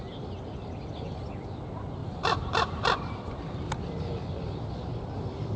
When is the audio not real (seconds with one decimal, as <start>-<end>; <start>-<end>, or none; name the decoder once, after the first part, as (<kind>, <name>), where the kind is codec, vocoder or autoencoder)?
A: 2.0-3.2 (vocoder, BigVGAN v2)